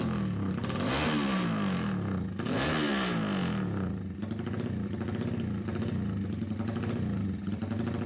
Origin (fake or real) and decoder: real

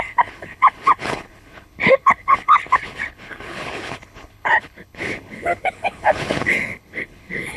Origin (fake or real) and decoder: fake, codec, HILCodec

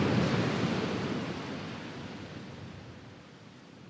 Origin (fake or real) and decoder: real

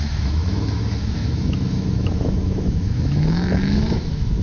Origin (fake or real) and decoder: fake, autoencoder, DAC-VAE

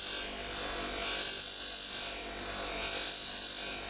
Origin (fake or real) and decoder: real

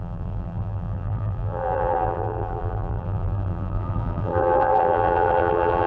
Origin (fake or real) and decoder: fake, vocoder, BigVGAN v2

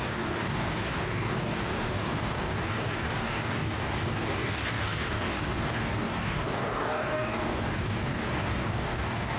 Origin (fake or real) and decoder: fake, codec, DAC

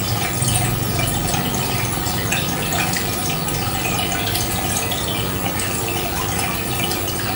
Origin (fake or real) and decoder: real